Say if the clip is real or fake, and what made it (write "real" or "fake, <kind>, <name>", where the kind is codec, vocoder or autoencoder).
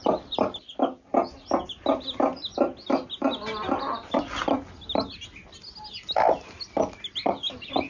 real